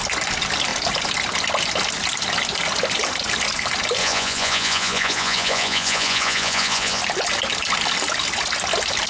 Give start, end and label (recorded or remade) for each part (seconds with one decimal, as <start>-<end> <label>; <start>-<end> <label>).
0.0-4.0 recorded; 4.0-7.0 remade; 7.0-9.1 recorded